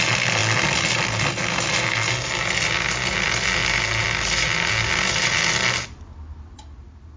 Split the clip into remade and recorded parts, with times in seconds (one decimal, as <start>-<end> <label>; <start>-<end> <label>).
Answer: 0.0-7.2 recorded